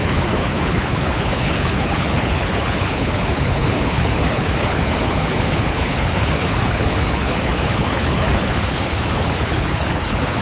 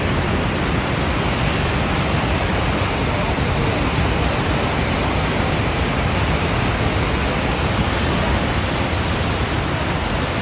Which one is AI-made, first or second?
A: first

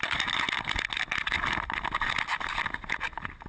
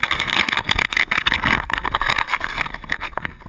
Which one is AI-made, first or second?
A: second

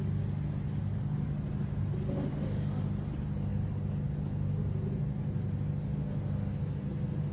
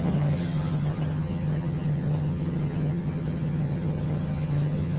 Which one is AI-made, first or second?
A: second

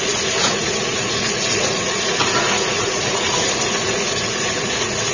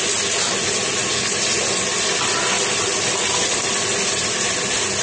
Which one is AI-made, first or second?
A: first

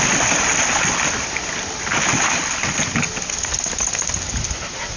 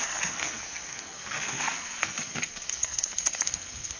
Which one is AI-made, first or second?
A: second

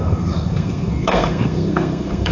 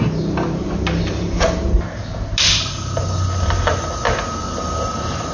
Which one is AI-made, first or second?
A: first